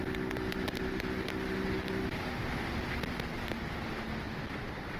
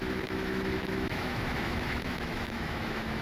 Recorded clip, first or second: first